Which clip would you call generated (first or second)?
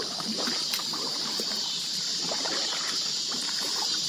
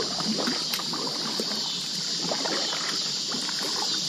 first